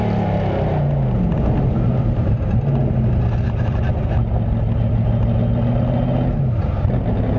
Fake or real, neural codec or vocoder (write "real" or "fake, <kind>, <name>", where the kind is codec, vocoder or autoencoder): real